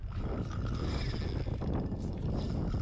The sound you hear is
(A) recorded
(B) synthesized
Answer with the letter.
A